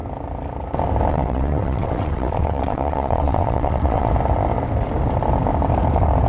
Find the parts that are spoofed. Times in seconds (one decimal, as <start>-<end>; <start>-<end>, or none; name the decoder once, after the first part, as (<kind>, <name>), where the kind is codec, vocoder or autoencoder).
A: 1.1-4.1 (vocoder, WaveNeXt)